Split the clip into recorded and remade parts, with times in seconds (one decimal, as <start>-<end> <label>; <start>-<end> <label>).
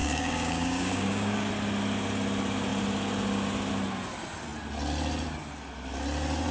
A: 0.0-1.5 remade; 1.5-6.5 recorded